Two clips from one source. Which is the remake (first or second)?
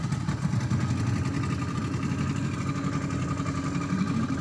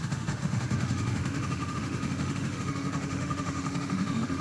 second